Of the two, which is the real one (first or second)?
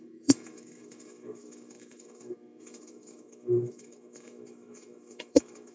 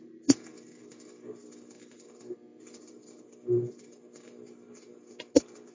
second